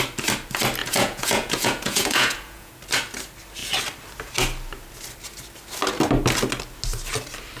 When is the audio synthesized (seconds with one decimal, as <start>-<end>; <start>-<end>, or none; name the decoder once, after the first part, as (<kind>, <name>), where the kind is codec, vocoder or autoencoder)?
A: 0.8-2.7 (vocoder, Vocos)